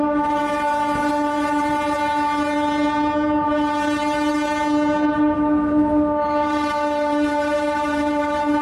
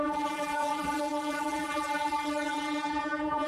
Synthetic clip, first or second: second